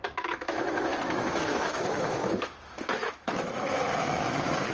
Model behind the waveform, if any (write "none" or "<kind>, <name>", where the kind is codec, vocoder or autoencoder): autoencoder, DAC-VAE